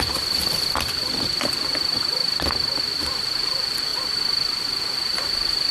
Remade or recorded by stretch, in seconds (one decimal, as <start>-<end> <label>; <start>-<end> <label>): 0.0-5.7 recorded

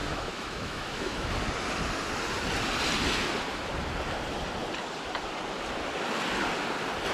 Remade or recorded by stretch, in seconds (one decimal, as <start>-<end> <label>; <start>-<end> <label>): 0.0-1.3 remade; 1.3-7.1 recorded

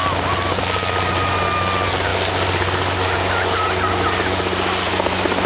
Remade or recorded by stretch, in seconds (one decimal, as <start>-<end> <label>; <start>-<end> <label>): 0.0-5.5 recorded

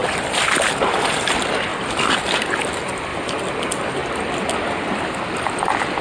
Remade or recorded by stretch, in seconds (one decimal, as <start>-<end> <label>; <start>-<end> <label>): 0.0-0.5 remade; 0.5-1.7 recorded; 1.7-2.7 remade; 2.7-6.0 recorded

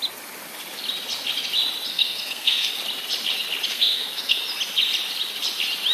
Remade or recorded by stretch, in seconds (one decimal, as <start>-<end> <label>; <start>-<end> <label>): 0.0-1.9 recorded; 1.9-2.7 remade; 2.7-3.7 recorded; 3.7-4.4 remade; 4.4-5.9 recorded

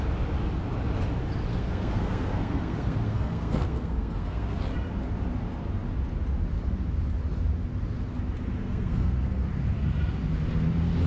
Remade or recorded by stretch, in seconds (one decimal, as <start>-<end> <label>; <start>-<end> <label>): 0.0-1.5 recorded; 1.5-4.6 remade; 4.6-8.5 recorded; 8.5-9.5 remade; 9.5-11.1 recorded

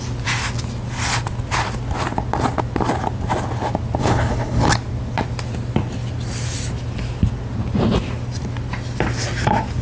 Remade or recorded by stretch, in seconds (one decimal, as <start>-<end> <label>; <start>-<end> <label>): 0.0-4.0 recorded; 4.0-4.7 remade; 4.7-9.8 recorded

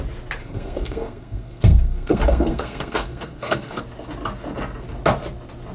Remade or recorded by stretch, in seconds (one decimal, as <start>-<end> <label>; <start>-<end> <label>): 0.0-0.4 recorded; 0.4-3.8 remade; 3.8-5.7 recorded